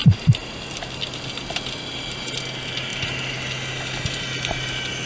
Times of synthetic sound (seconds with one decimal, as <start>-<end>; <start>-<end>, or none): none